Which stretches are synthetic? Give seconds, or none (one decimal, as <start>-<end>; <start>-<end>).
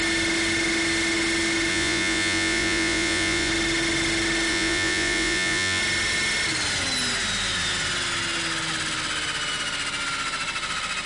1.7-3.5; 4.5-5.8